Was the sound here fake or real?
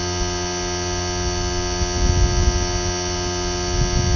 real